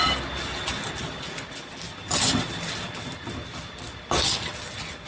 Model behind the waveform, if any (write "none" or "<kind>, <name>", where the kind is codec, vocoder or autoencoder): none